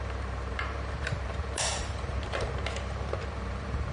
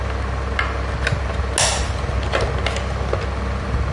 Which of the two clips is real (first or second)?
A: second